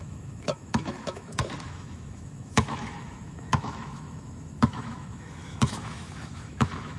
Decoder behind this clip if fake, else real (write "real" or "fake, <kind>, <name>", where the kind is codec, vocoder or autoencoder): fake, autoencoder, DAC-VAE